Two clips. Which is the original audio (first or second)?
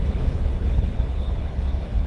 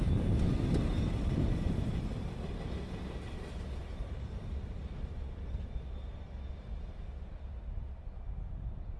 second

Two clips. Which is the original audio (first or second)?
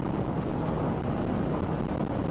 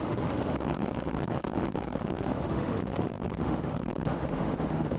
first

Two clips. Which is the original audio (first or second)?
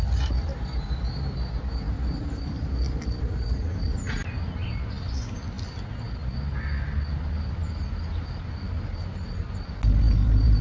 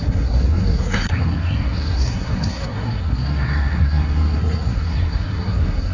first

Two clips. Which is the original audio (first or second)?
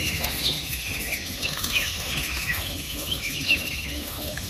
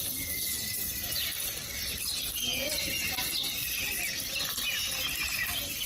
second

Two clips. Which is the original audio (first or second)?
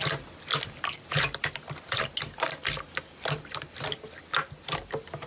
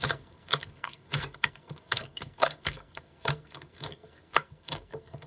first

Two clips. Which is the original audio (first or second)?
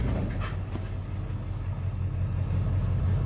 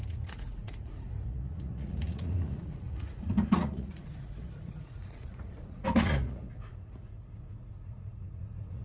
first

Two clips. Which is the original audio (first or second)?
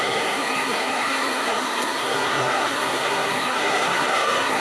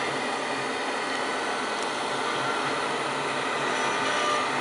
second